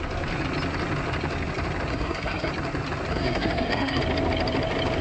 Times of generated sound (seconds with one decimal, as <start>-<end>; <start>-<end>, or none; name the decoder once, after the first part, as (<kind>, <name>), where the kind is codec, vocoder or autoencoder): 1.9-2.5 (codec, SNAC); 3.1-4.0